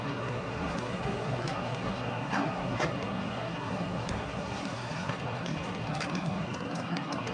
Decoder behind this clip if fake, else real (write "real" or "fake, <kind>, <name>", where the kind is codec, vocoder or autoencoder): fake, codec, SNAC